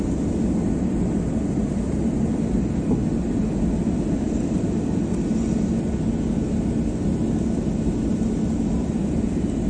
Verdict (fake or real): real